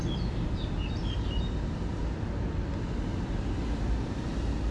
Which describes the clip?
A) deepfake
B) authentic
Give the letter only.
B